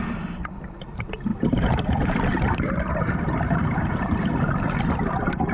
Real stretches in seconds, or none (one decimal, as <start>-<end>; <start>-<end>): 0.0-1.3; 4.2-5.5